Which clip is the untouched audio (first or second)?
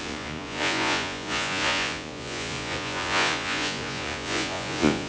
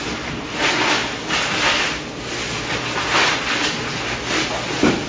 second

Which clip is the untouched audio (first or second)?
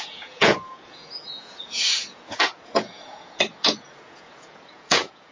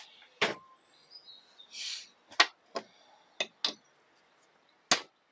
second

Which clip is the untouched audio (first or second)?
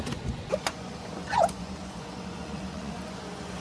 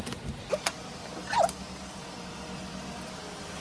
second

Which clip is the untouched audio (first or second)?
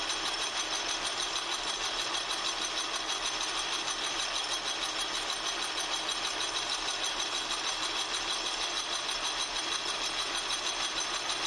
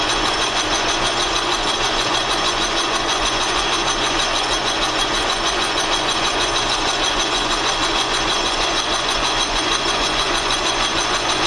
first